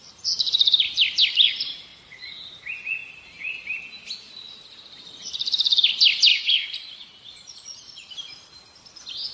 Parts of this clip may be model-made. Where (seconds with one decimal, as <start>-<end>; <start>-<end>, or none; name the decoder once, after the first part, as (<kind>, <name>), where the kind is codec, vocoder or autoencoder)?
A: 1.9-2.5 (vocoder, Vocos); 6.3-8.1